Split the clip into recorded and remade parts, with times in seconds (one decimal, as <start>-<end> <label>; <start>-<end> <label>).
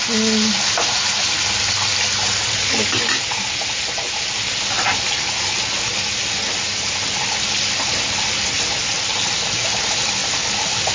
0.0-10.9 recorded